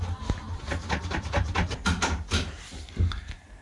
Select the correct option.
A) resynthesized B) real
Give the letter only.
B